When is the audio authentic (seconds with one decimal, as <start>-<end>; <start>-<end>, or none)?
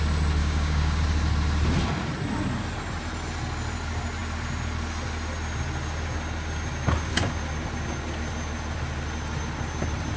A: 0.0-0.4; 1.0-10.2